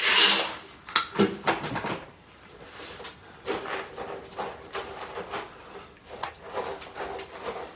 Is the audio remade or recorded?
recorded